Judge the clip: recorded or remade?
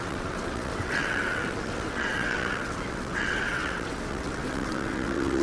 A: remade